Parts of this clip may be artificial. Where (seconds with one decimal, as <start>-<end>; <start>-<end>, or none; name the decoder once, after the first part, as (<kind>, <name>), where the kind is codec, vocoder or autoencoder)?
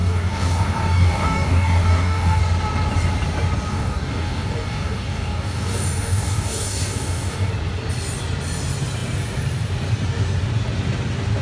0.0-2.4 (codec, DAC); 3.7-7.5